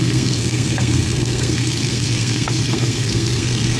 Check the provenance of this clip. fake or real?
fake